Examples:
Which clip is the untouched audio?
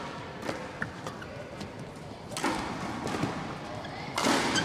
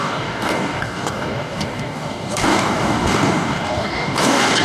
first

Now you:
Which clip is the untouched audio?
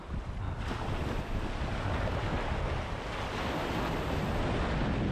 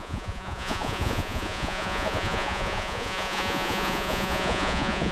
first